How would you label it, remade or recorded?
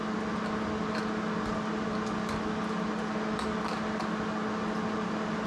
recorded